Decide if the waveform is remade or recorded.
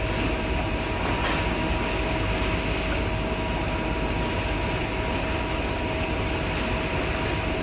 recorded